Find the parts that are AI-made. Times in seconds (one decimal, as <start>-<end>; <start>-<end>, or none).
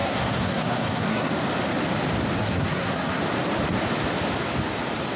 0.0-1.3; 2.4-3.2